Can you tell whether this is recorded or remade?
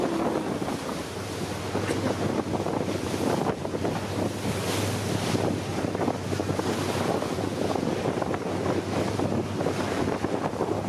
recorded